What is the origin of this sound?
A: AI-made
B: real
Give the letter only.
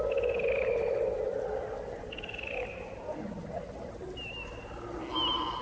B